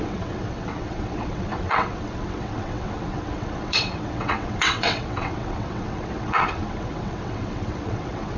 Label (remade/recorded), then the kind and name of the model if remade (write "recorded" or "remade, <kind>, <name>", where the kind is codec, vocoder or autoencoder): remade, vocoder, WaveNeXt